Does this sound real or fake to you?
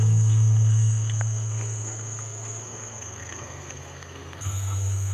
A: fake